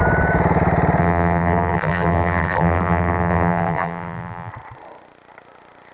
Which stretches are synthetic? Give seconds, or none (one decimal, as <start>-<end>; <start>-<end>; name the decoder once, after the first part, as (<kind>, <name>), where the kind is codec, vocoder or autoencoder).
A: 1.0-4.5 (vocoder, BigVGAN v2)